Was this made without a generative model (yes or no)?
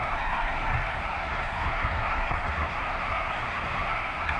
no